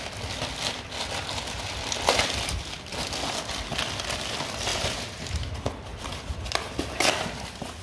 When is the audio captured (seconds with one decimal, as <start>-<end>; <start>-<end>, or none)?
0.0-4.7; 5.3-5.9; 6.7-7.8